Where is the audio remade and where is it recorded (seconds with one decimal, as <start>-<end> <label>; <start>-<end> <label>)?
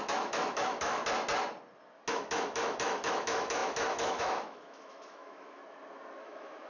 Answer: 0.0-1.0 remade; 1.0-2.1 recorded; 2.1-5.6 remade; 5.6-6.2 recorded; 6.2-6.7 remade